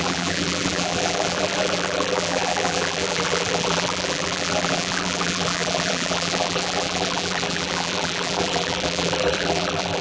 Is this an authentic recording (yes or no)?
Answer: no